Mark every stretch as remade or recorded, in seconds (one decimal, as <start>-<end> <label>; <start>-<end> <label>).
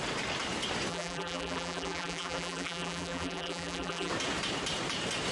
0.0-0.9 recorded; 0.9-4.1 remade; 4.1-5.3 recorded